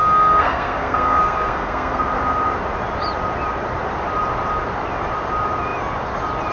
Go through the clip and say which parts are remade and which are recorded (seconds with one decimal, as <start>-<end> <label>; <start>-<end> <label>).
0.0-2.0 remade; 2.0-6.5 recorded